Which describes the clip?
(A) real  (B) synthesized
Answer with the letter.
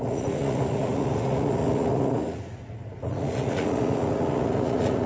B